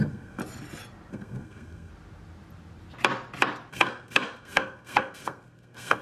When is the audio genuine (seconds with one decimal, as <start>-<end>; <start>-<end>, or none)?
0.4-1.1; 1.9-3.7